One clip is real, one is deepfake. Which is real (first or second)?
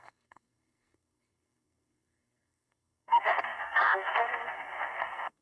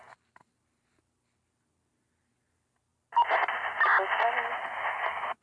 second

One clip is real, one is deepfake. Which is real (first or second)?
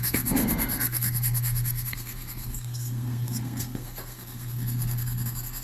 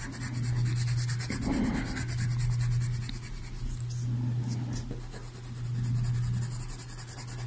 second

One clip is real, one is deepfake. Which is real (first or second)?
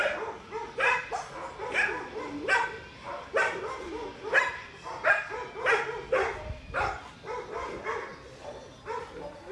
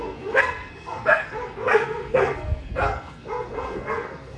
first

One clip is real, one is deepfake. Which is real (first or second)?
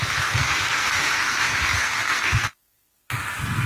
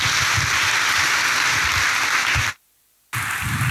second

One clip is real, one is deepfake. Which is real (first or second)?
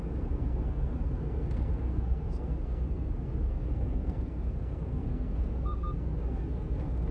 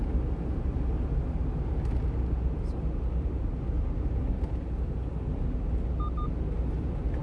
second